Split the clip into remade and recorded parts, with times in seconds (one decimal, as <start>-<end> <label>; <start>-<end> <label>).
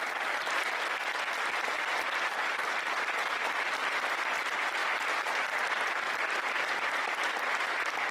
0.0-8.1 recorded